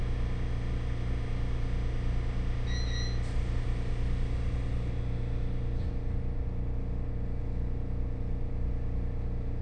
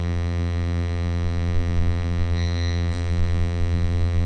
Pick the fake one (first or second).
second